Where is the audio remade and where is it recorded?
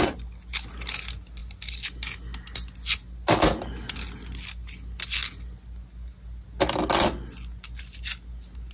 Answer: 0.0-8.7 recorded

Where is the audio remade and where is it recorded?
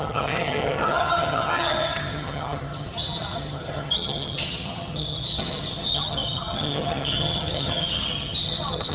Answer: 0.0-8.9 remade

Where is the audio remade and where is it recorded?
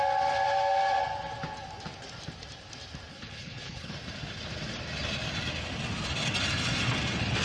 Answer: 0.0-3.1 recorded; 3.1-3.9 remade; 3.9-7.4 recorded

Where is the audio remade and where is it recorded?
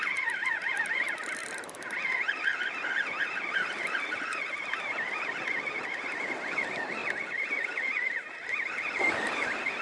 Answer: 0.0-9.8 recorded